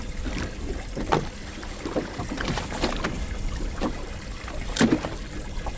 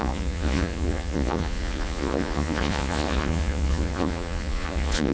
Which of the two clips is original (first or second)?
first